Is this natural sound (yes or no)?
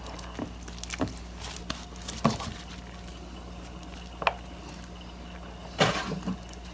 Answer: yes